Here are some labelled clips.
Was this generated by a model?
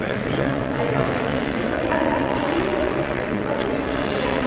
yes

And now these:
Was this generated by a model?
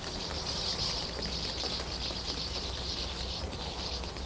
no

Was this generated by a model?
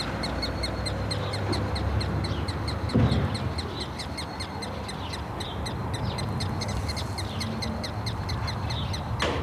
no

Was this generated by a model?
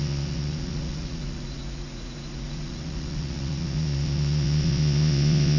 yes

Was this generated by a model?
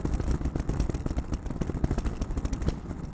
yes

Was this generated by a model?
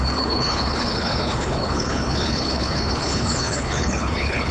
yes